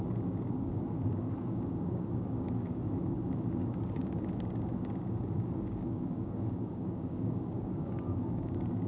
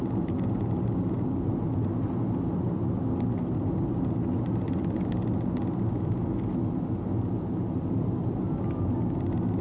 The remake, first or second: first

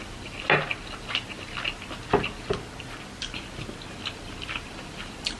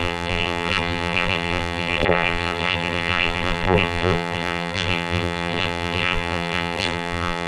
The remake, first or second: second